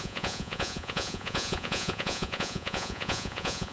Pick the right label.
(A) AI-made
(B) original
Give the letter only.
A